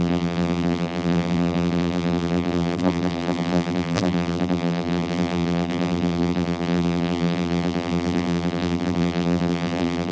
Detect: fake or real fake